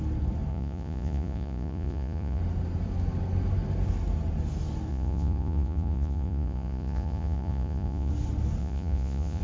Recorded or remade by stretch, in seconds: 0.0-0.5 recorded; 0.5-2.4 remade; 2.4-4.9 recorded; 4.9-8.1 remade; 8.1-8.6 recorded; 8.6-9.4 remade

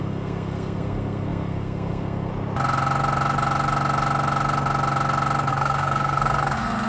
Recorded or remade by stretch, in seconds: 0.0-2.3 remade; 2.3-5.5 recorded; 5.5-6.9 remade

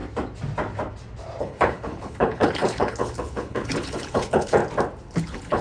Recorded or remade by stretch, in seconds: 0.0-1.4 recorded; 1.4-4.6 remade; 4.6-5.1 recorded; 5.1-5.6 remade

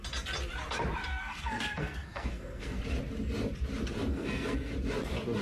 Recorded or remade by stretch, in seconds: 0.0-1.1 recorded; 1.1-2.8 remade; 2.8-4.1 recorded; 4.1-4.7 remade; 4.7-5.4 recorded

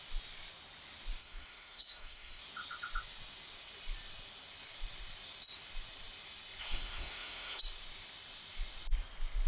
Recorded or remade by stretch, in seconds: 0.0-1.2 recorded; 1.2-2.4 remade; 2.4-6.6 recorded; 6.6-7.6 remade; 7.6-9.5 recorded

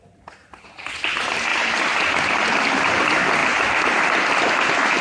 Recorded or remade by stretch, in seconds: 0.0-1.5 recorded; 1.5-2.5 remade; 2.5-5.0 recorded

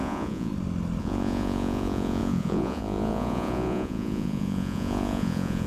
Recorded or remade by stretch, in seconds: 0.0-0.5 remade; 0.5-1.0 recorded; 1.0-5.7 remade